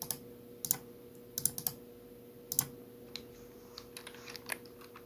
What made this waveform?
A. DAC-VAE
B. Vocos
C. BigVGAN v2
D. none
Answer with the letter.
D